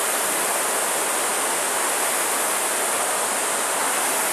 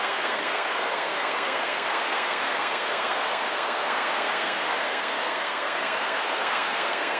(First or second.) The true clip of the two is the first